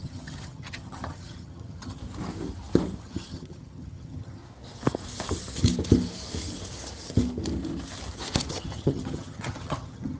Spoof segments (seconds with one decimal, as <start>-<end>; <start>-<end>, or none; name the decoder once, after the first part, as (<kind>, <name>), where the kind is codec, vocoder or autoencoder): 0.0-2.0 (vocoder, HiFi-GAN); 3.0-4.4; 8.5-10.2